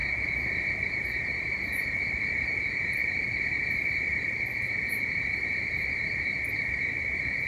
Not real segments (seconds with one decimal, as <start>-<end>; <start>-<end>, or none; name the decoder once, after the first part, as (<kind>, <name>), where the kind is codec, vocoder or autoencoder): none

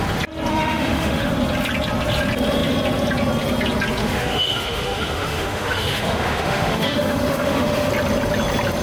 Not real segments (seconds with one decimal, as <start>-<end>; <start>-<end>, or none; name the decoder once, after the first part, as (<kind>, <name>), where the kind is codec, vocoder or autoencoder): 0.5-1.3 (autoencoder, DAC-VAE); 4.0-7.9

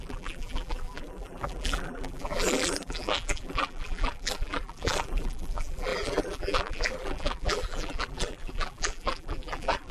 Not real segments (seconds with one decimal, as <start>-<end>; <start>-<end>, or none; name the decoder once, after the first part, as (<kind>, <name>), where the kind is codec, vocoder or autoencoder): 0.0-9.9 (vocoder, BigVGAN v2)

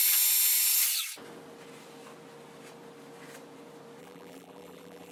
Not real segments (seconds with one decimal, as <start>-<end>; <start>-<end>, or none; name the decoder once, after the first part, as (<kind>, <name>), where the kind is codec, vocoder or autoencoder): 4.0-5.1 (vocoder, BigVGAN v2)

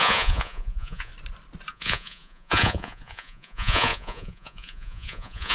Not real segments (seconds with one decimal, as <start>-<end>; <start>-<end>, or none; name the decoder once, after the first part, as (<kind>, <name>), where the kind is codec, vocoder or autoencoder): 0.0-1.1 (vocoder, Vocos); 1.7-5.5

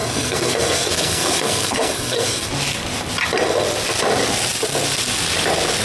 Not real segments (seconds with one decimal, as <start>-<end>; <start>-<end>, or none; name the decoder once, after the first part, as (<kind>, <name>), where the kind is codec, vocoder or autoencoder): 0.0-2.5 (codec, SNAC)

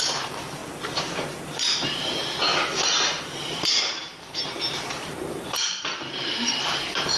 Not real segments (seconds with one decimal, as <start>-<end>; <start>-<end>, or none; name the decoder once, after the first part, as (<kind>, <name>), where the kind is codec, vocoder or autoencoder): 0.0-0.6 (vocoder, BigVGAN v2); 1.2-2.5; 3.2-7.2

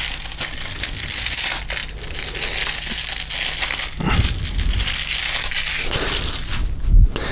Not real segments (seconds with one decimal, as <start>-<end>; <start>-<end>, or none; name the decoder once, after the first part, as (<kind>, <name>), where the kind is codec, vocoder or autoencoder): none